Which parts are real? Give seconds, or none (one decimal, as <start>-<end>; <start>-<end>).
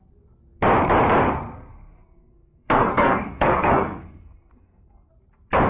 0.0-1.7; 5.1-5.7